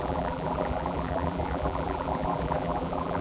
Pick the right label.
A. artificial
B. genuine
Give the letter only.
A